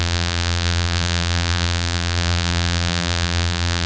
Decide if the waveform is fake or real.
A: fake